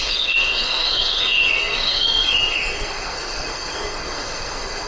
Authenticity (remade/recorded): remade